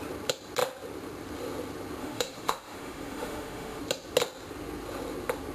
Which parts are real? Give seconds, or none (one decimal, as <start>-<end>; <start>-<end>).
0.0-2.0; 3.8-5.5